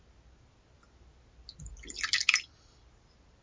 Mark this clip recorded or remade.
recorded